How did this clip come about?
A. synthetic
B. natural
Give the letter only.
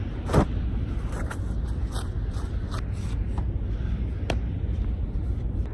B